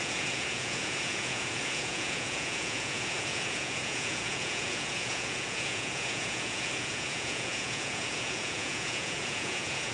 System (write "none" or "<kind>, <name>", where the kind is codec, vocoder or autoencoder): vocoder, Vocos